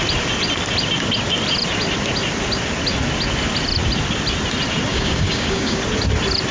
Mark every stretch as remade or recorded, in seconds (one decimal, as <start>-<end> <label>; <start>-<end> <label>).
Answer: 0.0-4.9 recorded; 4.9-5.8 remade; 5.8-6.5 recorded